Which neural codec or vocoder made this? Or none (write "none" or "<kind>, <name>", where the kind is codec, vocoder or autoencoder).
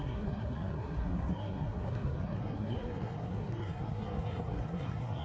codec, SNAC